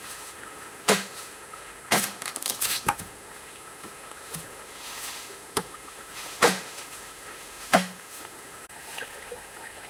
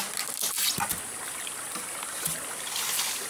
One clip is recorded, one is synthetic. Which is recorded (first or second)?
second